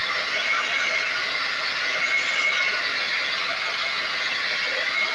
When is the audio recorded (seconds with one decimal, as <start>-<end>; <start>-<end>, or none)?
0.0-5.1